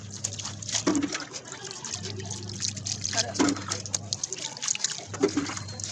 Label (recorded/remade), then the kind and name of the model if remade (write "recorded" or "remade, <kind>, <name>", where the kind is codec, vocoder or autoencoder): recorded